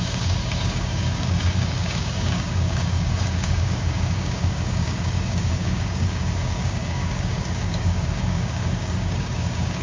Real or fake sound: fake